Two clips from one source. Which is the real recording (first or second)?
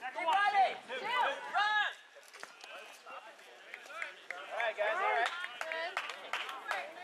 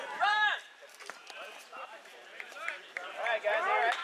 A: first